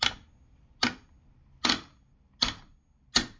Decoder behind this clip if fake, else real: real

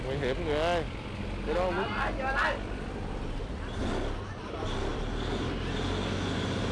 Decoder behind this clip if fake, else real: real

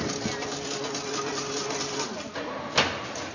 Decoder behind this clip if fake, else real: real